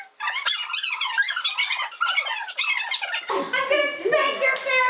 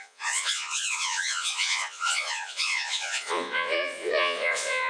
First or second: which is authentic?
first